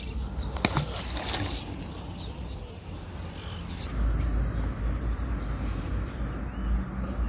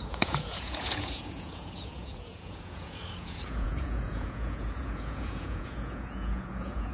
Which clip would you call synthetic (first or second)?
second